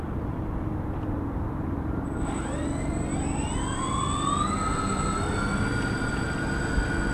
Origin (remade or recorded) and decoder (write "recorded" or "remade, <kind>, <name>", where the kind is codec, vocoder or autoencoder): recorded